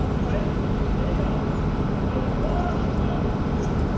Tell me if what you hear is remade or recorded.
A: recorded